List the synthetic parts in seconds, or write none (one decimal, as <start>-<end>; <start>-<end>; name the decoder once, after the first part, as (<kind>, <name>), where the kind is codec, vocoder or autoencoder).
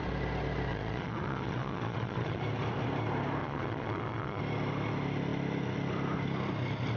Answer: 0.7-2.4 (vocoder, Vocos); 3.4-4.4